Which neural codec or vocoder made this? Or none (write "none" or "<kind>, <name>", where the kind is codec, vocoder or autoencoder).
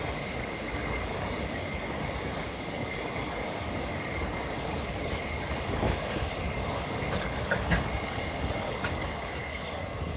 codec, DAC